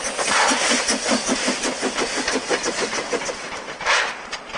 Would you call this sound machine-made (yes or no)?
no